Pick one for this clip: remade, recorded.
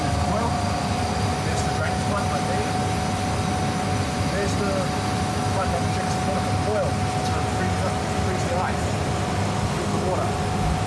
recorded